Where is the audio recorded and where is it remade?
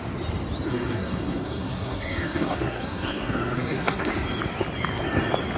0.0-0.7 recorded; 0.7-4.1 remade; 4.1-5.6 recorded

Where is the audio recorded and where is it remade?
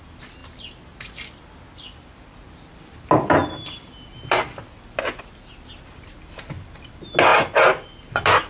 0.0-8.5 recorded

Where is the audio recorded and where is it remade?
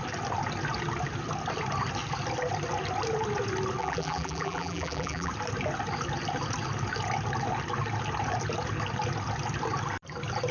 0.0-3.8 recorded; 3.8-5.3 remade; 5.3-10.5 recorded